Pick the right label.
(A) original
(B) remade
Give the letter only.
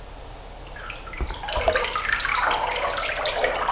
A